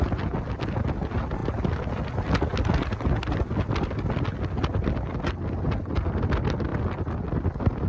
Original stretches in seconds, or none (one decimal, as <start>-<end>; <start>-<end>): 0.0-7.9